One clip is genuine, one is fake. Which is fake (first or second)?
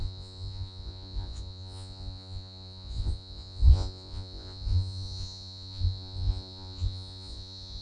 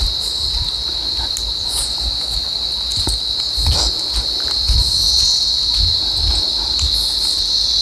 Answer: first